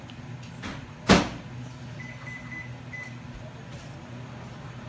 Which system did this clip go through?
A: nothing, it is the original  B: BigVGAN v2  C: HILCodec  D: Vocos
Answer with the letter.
A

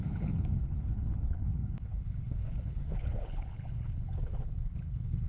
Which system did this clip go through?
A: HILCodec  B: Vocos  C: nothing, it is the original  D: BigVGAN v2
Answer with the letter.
A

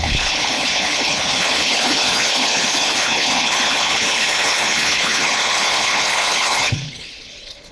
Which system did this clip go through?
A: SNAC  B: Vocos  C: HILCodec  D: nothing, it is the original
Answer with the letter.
C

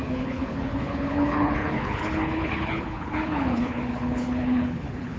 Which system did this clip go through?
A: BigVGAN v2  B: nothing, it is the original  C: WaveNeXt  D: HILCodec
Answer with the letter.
D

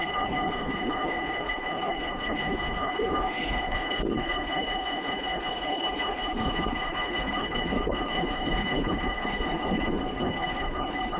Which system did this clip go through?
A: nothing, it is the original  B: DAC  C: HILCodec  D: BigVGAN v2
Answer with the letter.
C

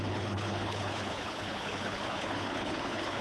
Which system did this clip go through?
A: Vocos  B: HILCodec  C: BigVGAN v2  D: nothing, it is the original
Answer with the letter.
B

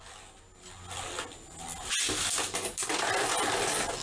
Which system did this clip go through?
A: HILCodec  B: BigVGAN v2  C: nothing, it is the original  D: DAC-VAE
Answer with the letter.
C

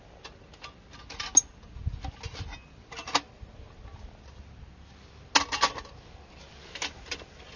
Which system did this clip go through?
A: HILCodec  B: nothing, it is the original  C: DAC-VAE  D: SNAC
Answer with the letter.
B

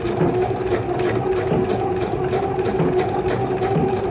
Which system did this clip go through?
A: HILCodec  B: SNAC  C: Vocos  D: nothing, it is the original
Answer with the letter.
D